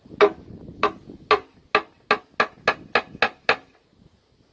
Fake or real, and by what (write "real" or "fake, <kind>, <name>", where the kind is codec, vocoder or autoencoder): real